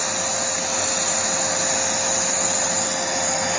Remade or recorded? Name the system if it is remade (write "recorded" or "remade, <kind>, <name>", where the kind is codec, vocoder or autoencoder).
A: recorded